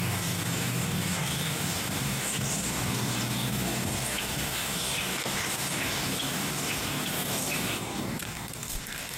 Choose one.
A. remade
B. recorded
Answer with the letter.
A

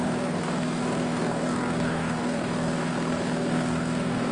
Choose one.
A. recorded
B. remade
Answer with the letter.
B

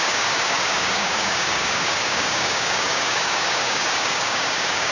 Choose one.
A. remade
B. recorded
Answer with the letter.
A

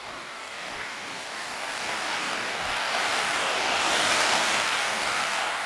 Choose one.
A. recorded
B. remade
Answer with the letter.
B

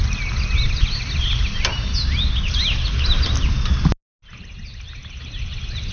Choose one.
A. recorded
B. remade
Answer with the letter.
A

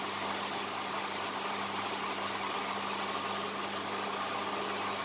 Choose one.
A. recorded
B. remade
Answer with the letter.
A